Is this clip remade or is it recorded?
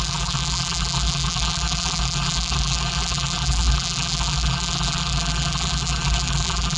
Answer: remade